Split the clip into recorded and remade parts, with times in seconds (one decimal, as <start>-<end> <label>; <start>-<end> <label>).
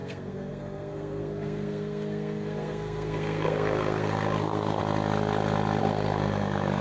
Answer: 0.0-4.8 remade; 4.8-5.8 recorded; 5.8-6.8 remade